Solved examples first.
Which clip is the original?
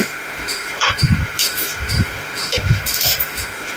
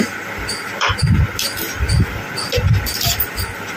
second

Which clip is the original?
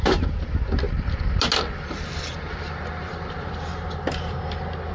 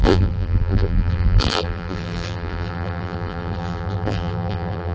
first